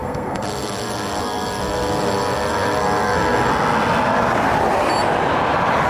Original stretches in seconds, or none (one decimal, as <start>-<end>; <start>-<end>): 3.5-5.9